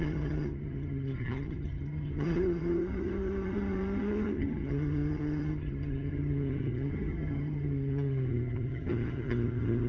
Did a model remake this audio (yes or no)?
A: yes